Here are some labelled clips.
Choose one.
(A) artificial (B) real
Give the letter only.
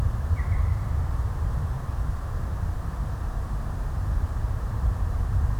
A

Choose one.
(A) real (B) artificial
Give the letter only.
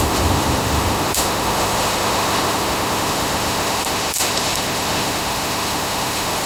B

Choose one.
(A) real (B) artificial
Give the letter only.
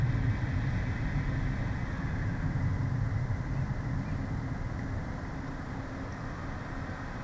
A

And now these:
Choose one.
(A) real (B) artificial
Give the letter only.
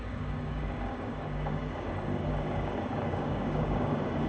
B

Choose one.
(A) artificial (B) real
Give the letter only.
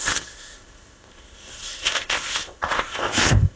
A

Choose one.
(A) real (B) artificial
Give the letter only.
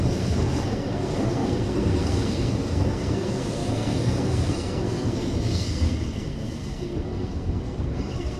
B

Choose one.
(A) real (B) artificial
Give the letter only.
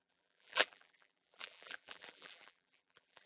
B